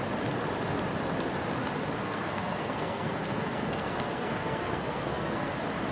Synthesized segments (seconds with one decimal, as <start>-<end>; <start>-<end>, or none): 2.0-5.5